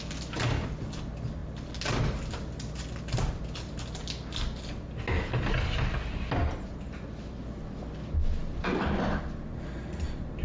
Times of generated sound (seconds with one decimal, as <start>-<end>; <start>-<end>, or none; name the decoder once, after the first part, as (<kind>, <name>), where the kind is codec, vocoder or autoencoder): none